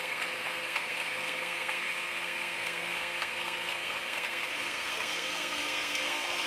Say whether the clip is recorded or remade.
remade